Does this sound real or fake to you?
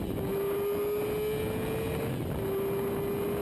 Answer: real